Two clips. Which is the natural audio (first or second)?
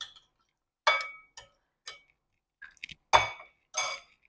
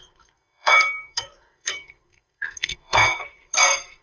first